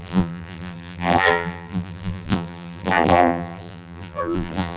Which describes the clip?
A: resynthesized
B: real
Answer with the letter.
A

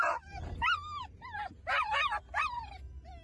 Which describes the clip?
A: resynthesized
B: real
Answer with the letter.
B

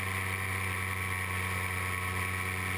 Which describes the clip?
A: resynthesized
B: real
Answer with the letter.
A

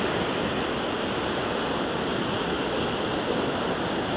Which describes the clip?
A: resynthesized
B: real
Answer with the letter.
B